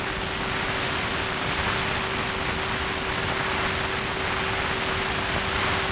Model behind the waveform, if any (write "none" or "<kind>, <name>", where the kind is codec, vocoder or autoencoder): none